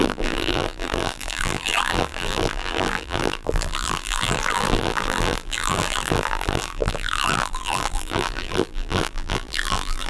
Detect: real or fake fake